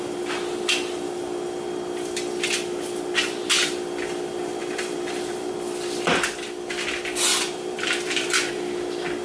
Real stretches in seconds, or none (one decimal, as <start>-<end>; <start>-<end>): 0.0-4.6; 5.5-7.3; 8.5-9.2